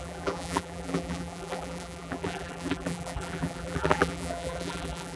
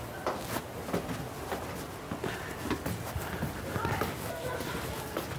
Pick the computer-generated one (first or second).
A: first